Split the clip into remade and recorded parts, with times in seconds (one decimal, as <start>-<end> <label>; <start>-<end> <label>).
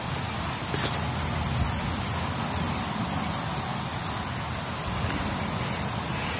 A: 0.0-6.4 recorded